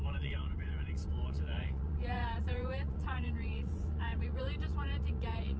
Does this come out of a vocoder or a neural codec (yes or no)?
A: yes